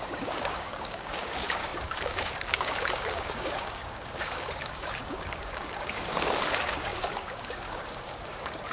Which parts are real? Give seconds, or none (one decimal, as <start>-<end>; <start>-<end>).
none